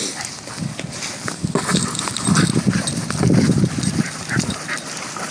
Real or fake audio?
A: real